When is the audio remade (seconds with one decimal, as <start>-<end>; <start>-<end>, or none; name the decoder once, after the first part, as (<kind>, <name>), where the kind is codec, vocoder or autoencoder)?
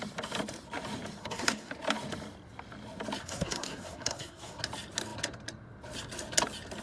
1.2-1.7 (codec, SNAC); 3.2-4.6